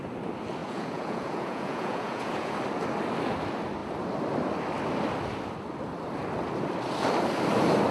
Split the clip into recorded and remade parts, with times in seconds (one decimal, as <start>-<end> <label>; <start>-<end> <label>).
0.0-0.6 recorded; 0.6-2.5 remade; 2.5-7.9 recorded